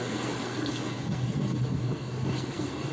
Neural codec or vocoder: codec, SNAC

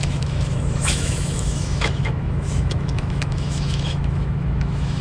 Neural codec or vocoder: autoencoder, DAC-VAE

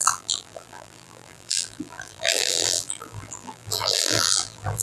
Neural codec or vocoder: vocoder, BigVGAN v2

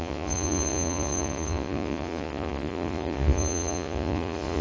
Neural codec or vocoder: vocoder, Vocos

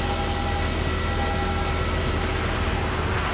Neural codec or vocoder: none